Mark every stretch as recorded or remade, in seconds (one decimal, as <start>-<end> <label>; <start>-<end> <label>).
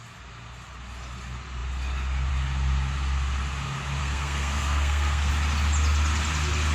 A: 0.0-4.0 recorded; 4.0-5.3 remade; 5.3-6.7 recorded